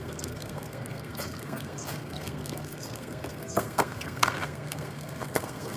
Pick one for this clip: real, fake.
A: fake